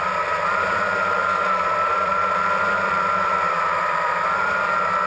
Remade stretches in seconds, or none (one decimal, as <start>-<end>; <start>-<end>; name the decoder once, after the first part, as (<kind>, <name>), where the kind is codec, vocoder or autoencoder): 1.2-4.2 (vocoder, BigVGAN v2)